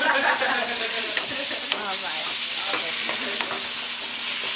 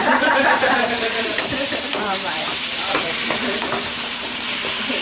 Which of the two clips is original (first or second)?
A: first